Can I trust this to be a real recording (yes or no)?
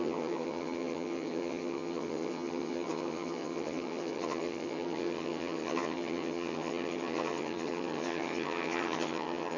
no